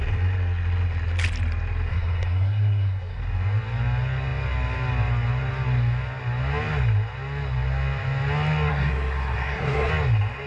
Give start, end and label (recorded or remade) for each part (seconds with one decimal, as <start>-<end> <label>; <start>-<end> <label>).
0.0-1.9 recorded; 1.9-3.2 remade; 3.2-8.7 recorded; 8.7-9.9 remade; 9.9-10.5 recorded